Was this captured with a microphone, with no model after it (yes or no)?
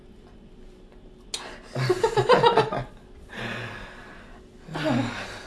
yes